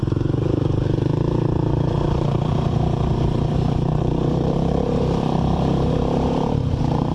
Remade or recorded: remade